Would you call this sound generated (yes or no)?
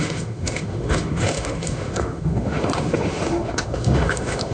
yes